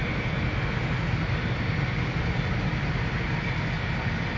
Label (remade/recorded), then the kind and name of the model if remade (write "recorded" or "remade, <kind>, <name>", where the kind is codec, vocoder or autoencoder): recorded